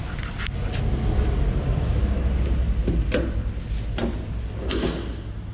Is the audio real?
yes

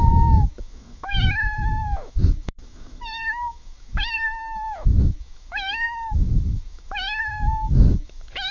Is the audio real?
no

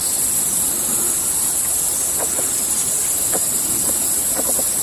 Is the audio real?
yes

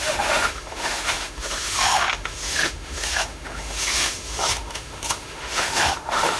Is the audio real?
no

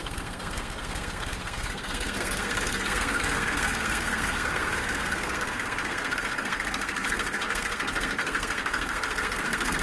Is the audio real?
no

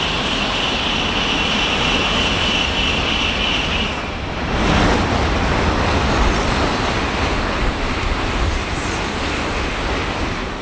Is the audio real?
yes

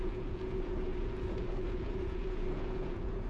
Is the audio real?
no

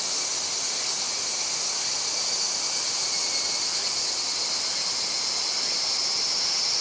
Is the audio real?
yes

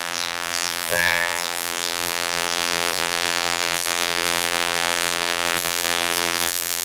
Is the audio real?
no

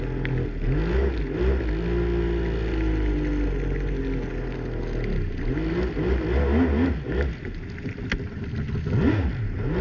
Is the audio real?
yes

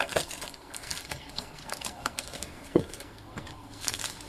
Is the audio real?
no